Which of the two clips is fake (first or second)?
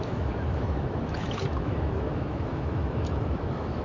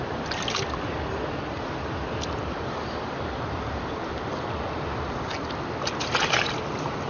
first